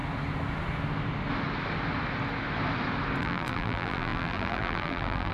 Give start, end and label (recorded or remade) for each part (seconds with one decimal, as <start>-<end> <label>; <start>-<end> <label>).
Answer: 0.0-3.2 recorded; 3.2-5.3 remade